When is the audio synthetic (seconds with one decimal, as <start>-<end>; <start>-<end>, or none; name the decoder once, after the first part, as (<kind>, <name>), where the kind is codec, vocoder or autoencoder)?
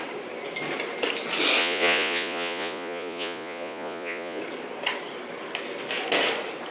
1.6-4.4 (vocoder, Vocos)